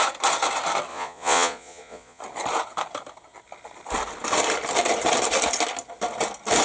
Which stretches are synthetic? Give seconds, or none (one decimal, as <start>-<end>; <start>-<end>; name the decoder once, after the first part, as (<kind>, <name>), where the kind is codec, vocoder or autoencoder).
0.9-2.2 (vocoder, Vocos)